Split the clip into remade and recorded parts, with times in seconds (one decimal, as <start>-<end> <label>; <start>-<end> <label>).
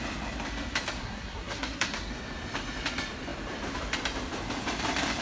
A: 0.0-1.0 recorded; 1.0-2.1 remade; 2.1-5.2 recorded